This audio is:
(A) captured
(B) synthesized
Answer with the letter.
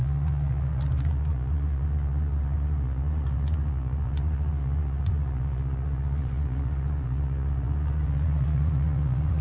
B